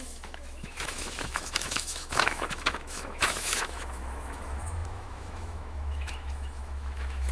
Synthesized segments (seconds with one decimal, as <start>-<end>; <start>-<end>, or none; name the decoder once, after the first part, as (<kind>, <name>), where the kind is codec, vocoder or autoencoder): 0.0-7.3 (autoencoder, DAC-VAE)